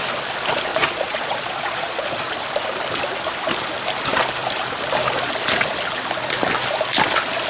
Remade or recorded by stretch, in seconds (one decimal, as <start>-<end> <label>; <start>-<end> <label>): 0.0-0.7 recorded; 0.7-2.2 remade; 2.2-7.5 recorded